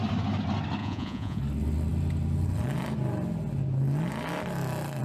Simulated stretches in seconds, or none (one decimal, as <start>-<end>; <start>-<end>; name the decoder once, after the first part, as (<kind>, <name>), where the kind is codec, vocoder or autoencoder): 0.8-1.4 (vocoder, Vocos)